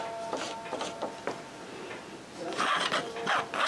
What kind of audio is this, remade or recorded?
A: recorded